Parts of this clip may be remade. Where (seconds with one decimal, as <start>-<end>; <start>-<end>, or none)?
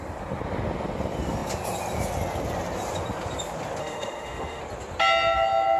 3.8-4.6